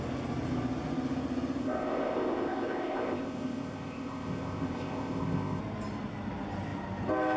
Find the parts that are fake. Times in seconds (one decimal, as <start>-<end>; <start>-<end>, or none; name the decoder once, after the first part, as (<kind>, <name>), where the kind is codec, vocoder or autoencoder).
1.6-5.6 (codec, ZipCodec)